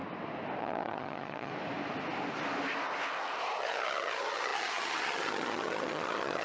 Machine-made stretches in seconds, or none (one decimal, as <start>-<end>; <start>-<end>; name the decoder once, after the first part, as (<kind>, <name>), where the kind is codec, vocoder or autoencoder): 0.6-1.5 (vocoder, HiFi-GAN); 3.6-6.4